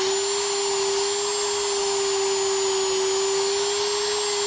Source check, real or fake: real